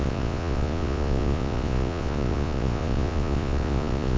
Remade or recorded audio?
remade